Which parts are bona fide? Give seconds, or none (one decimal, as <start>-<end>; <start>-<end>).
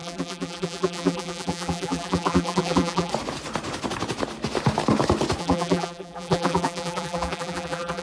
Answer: 3.1-5.4